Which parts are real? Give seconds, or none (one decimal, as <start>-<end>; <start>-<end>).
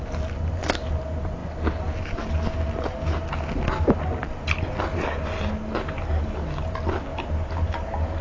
0.0-7.1; 7.7-8.2